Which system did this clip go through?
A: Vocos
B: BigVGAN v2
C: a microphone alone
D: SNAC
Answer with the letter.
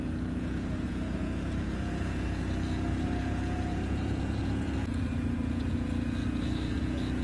A